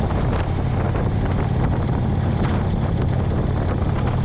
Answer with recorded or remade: recorded